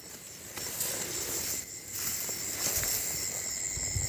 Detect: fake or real real